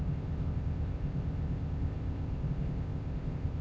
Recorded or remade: remade